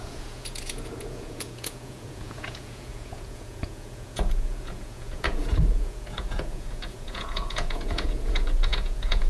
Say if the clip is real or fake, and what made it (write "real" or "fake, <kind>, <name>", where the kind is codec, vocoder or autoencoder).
fake, vocoder, Vocos